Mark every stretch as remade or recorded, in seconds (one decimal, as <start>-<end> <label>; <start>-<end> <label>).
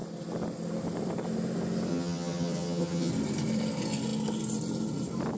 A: 0.0-1.9 recorded; 1.9-3.1 remade; 3.1-5.4 recorded